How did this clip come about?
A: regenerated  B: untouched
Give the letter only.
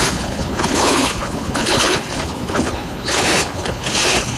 A